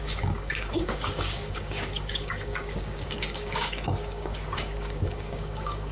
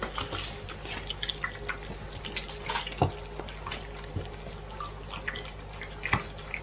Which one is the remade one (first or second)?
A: first